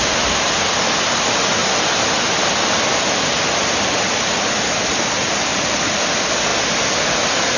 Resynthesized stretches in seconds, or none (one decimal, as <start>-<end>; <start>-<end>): none